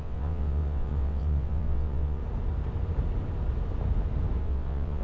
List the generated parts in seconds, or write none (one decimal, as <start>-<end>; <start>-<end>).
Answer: 0.0-2.2; 4.4-5.0